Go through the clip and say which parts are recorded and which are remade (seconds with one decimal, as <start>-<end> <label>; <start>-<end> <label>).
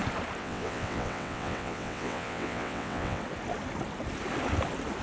0.0-0.4 recorded; 0.4-3.2 remade; 3.2-5.0 recorded